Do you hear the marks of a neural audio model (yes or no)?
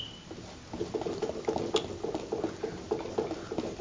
no